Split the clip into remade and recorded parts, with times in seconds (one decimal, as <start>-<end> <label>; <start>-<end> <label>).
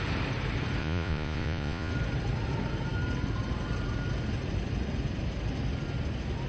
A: 0.0-0.8 recorded; 0.8-1.9 remade; 1.9-6.5 recorded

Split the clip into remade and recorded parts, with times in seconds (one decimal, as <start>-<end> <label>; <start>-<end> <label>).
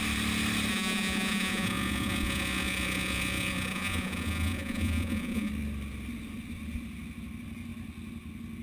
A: 0.0-0.7 recorded; 0.7-5.5 remade; 5.5-8.6 recorded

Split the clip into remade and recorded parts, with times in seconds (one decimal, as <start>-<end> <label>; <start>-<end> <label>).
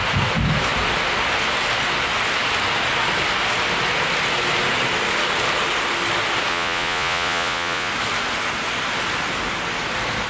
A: 0.0-6.5 recorded; 6.5-7.9 remade; 7.9-10.3 recorded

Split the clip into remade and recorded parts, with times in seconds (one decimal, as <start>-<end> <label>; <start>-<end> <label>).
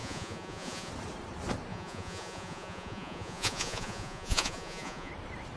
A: 0.0-0.9 remade; 0.9-1.7 recorded; 1.7-5.1 remade; 5.1-5.6 recorded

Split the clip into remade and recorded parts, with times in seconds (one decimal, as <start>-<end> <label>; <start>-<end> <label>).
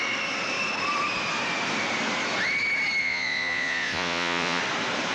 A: 0.0-3.0 recorded; 3.0-4.6 remade; 4.6-5.1 recorded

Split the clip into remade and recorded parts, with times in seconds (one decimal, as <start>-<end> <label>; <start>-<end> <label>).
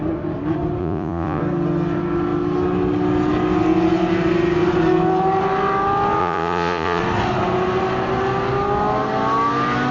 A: 0.0-0.8 recorded; 0.8-1.4 remade; 1.4-6.2 recorded; 6.2-7.0 remade; 7.0-9.9 recorded